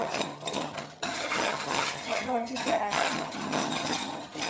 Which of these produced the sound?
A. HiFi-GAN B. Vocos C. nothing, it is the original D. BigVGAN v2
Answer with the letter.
A